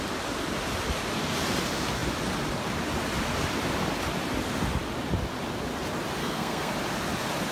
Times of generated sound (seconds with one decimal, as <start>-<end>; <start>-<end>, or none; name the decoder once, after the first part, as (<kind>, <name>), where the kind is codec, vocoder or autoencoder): 6.2-6.7 (codec, SNAC)